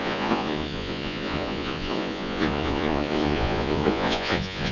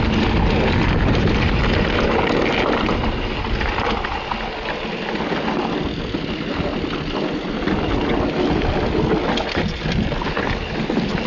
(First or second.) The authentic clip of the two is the second